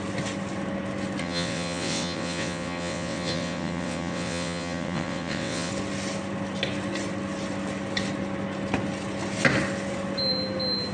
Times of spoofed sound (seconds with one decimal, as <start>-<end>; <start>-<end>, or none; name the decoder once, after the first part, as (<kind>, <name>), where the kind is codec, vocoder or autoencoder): 1.2-5.7 (vocoder, WaveNeXt)